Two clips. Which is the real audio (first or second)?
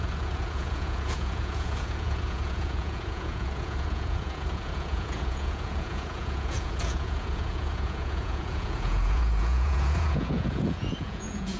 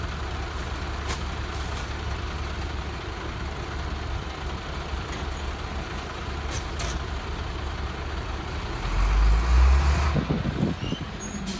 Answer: second